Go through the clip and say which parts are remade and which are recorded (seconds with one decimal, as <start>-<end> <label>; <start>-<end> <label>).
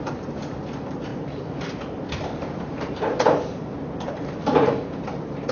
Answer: 0.0-5.5 remade